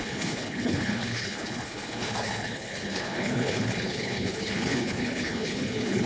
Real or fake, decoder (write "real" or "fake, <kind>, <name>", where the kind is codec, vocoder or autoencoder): fake, codec, HILCodec